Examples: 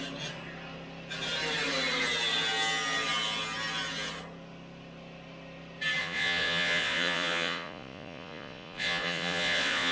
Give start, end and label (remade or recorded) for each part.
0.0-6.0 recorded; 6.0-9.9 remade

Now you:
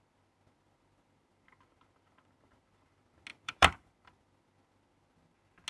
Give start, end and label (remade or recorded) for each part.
0.0-3.3 recorded; 3.3-3.9 remade; 3.9-5.7 recorded

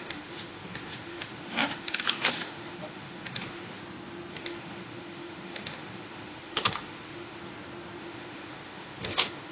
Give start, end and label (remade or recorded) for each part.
0.0-3.8 remade; 3.8-4.3 recorded; 4.3-7.4 remade; 7.4-8.0 recorded; 8.0-9.5 remade

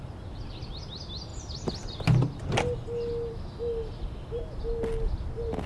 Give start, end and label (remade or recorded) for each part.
0.0-5.7 recorded

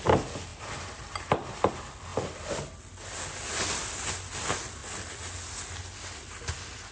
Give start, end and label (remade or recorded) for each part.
0.0-6.9 recorded

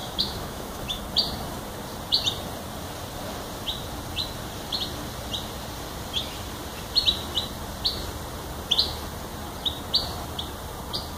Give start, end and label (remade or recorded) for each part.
0.0-1.0 remade; 1.0-11.2 recorded